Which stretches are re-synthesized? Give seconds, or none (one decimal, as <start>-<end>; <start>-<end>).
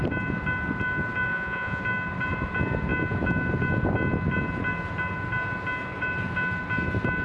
1.3-1.8